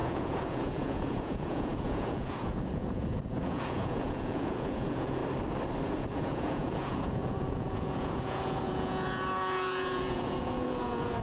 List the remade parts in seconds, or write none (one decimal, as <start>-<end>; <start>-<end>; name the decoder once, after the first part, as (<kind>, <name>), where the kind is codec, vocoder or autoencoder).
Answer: 0.0-5.2 (vocoder, Vocos); 5.9-11.2